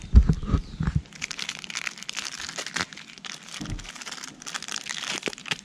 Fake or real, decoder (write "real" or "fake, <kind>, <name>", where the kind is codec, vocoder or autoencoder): real